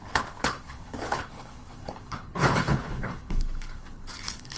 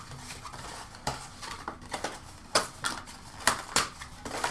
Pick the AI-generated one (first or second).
first